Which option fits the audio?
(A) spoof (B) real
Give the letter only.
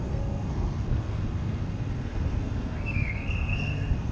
A